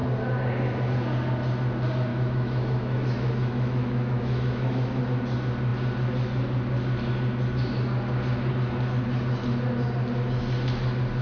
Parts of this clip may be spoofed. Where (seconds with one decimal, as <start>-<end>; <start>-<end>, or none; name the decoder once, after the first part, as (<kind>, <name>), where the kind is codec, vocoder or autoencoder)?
2.1-5.0 (autoencoder, DAC-VAE)